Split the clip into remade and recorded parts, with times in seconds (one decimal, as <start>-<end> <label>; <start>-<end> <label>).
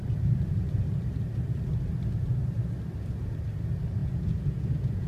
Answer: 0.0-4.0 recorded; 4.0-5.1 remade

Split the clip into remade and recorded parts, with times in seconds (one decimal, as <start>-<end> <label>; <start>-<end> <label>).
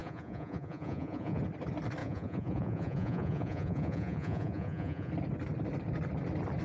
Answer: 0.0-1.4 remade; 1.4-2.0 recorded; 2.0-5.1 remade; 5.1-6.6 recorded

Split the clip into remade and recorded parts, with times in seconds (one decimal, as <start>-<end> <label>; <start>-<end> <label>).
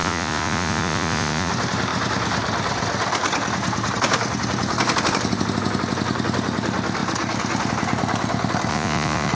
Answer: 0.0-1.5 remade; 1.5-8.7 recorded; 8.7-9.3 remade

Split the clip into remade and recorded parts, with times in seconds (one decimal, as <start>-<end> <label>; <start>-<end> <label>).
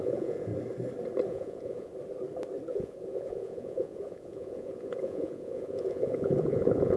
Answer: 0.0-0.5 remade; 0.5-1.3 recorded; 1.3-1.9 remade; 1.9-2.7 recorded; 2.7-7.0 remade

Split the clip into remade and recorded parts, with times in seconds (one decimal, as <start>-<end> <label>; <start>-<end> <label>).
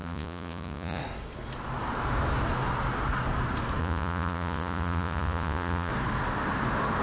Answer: 0.0-1.0 remade; 1.0-3.8 recorded; 3.8-5.9 remade; 5.9-7.0 recorded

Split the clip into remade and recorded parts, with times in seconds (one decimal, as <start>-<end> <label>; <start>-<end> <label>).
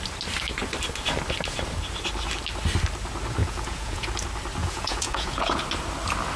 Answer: 0.0-3.4 recorded; 3.4-4.1 remade; 4.1-4.6 recorded; 4.6-5.6 remade; 5.6-6.4 recorded